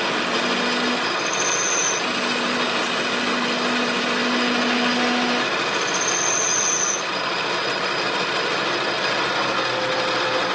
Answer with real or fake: real